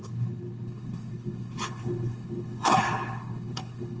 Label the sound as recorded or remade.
remade